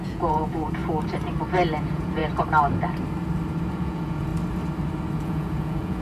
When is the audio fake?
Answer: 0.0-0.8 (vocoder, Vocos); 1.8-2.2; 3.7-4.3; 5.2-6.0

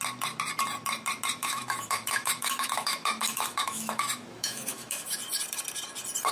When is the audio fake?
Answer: 1.4-5.2 (autoencoder, DAC-VAE)

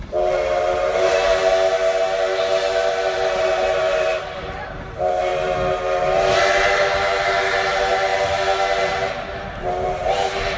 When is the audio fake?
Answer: 0.0-1.4 (vocoder, BigVGAN v2); 2.9-5.3; 6.4-8.1; 8.8-10.6